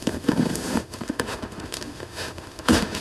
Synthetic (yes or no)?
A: yes